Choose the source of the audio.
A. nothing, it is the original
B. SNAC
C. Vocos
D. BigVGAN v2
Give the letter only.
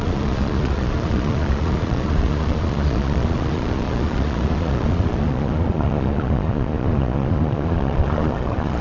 C